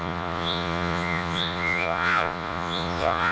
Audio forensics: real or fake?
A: fake